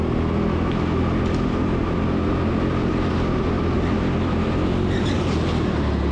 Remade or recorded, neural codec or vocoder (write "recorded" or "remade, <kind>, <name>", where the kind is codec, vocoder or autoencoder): recorded